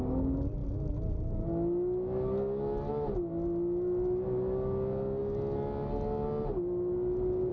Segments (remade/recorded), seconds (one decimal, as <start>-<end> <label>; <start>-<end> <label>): 0.0-7.5 recorded